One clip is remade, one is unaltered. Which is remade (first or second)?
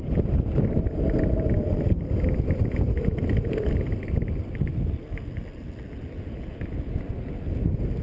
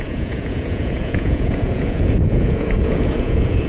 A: second